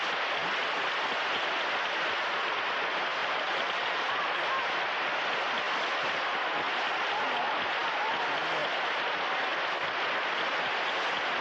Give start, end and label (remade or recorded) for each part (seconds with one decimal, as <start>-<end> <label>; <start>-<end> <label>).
0.0-3.2 recorded; 3.2-4.1 remade; 4.1-11.4 recorded